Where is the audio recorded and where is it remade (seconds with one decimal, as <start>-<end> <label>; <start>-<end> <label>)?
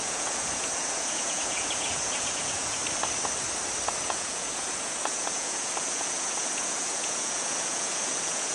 0.0-2.8 remade; 2.8-3.9 recorded; 3.9-8.5 remade